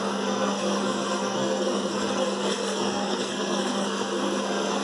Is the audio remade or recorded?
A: remade